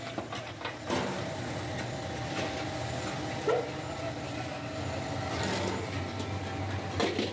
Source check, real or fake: real